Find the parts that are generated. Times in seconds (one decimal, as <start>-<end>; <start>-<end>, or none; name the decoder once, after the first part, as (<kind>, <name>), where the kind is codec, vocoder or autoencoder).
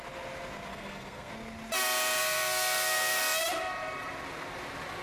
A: 0.7-1.3 (codec, SNAC); 2.2-3.2